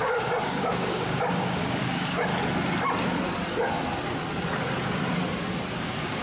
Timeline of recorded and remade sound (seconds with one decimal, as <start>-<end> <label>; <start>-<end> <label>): 0.0-2.3 remade; 2.3-5.7 recorded; 5.7-6.2 remade

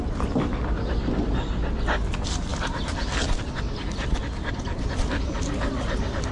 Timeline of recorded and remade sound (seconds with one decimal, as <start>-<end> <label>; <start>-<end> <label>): 0.0-6.3 recorded

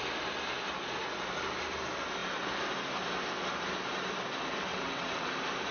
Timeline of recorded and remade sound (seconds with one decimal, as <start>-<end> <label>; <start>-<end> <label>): 0.0-4.7 recorded; 4.7-5.3 remade; 5.3-5.7 recorded

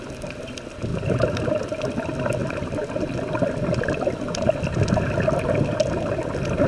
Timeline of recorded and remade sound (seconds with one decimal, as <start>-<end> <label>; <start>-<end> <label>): 0.0-0.9 recorded; 0.9-1.5 remade; 1.5-2.4 recorded; 2.4-3.1 remade; 3.1-6.7 recorded